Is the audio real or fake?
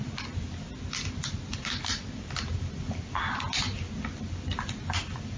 real